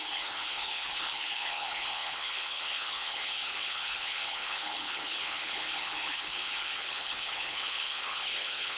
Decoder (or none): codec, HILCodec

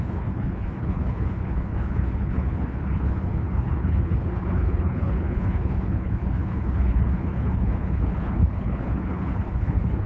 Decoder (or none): codec, HILCodec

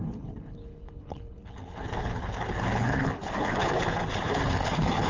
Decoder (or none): codec, HILCodec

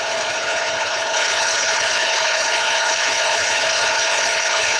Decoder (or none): codec, HILCodec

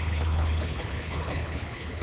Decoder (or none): codec, HILCodec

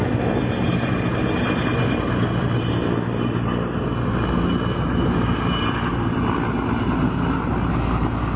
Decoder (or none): none